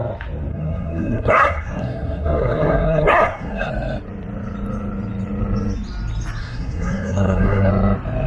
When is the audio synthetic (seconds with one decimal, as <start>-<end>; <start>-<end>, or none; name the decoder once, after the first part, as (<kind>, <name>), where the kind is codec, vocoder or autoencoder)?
0.5-3.7 (codec, SNAC); 6.4-7.7